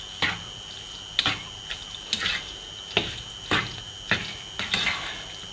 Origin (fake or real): real